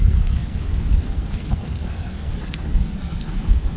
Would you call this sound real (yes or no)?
no